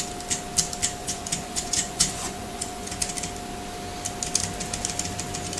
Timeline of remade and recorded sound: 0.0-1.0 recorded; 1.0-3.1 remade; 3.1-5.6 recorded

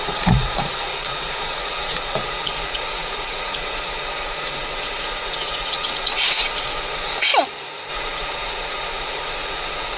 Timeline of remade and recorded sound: 0.0-7.3 remade; 7.3-7.9 recorded; 7.9-10.0 remade

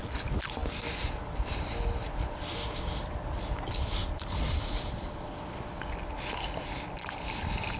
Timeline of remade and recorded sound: 0.0-4.0 recorded; 4.0-5.0 remade; 5.0-7.8 recorded

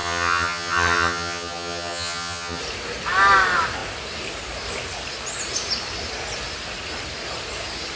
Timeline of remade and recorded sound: 0.0-2.6 remade; 2.6-8.0 recorded

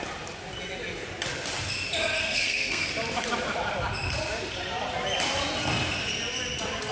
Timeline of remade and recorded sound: 0.0-2.2 recorded; 2.2-2.9 remade; 2.9-6.9 recorded